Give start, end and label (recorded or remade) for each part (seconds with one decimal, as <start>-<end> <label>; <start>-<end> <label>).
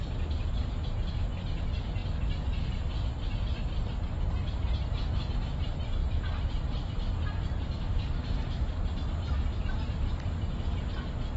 0.0-11.4 recorded